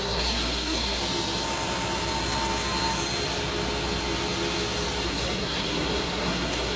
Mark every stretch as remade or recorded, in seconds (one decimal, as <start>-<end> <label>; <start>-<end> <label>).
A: 0.0-1.0 remade; 1.0-5.1 recorded; 5.1-6.8 remade